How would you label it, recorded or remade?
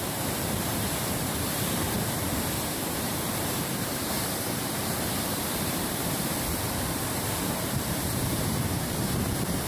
remade